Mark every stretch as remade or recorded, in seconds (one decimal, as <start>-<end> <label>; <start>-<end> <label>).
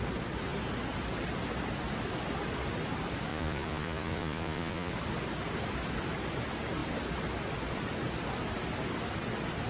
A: 0.0-3.3 recorded; 3.3-4.9 remade; 4.9-9.7 recorded